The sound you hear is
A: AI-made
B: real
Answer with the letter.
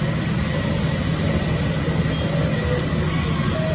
B